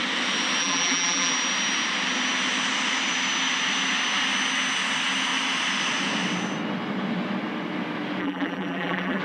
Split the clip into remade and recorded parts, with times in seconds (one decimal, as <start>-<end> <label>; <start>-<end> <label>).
0.0-0.6 recorded; 0.6-1.3 remade; 1.3-8.2 recorded; 8.2-9.2 remade